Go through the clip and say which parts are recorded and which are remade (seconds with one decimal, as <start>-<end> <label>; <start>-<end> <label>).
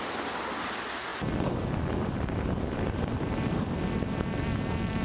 0.0-1.1 recorded; 1.1-3.9 remade; 3.9-5.0 recorded